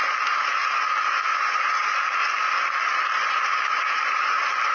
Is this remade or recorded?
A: recorded